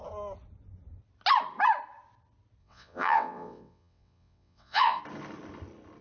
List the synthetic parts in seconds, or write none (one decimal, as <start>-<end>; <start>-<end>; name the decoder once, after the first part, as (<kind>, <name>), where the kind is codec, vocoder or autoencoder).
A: 2.6-5.0 (vocoder, WaveNeXt)